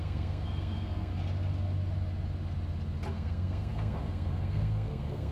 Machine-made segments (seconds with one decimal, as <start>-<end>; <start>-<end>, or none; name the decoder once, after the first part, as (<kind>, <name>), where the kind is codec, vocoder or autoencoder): 0.0-1.1 (codec, SNAC); 3.1-5.3